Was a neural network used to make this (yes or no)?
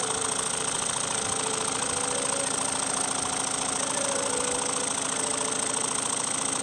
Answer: no